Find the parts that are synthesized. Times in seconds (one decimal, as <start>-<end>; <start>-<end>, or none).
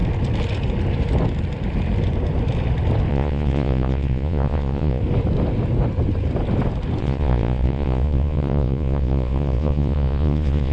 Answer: 3.1-5.0; 7.0-10.7